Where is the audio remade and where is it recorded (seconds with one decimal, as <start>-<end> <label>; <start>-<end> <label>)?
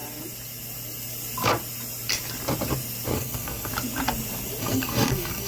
0.0-3.1 recorded; 3.1-3.7 remade; 3.7-4.6 recorded; 4.6-5.5 remade